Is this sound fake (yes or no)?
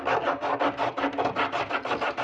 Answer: no